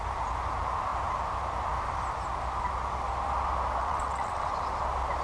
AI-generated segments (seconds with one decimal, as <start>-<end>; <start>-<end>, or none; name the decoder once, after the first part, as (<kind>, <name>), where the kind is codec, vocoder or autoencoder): 3.8-4.5 (vocoder, WaveNeXt)